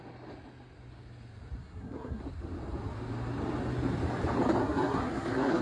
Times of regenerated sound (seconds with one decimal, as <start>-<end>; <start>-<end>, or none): 1.6-2.2; 4.6-5.6